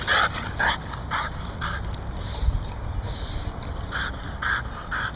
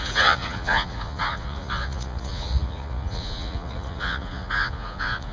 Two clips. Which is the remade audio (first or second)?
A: second